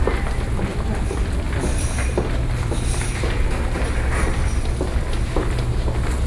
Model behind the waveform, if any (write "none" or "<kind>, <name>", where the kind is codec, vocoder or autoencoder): none